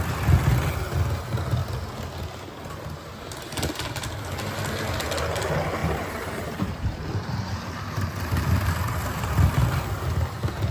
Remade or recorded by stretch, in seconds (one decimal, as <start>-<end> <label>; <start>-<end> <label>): 0.0-5.8 recorded; 5.8-7.0 remade; 7.0-10.7 recorded